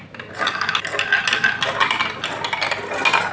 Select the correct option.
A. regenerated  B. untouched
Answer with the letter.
B